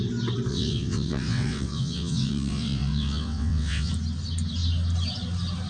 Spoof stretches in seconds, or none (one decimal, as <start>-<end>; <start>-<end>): 0.5-3.9